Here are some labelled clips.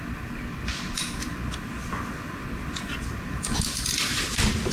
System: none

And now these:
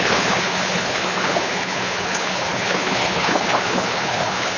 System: codec, HILCodec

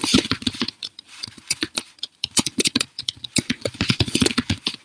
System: vocoder, Vocos